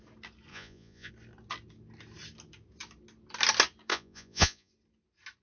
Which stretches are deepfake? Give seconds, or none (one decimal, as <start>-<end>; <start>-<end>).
0.5-1.1; 3.9-4.7